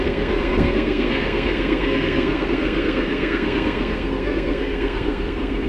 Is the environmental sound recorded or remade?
remade